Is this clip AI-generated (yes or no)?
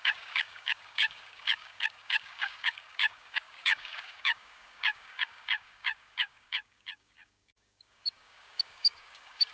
yes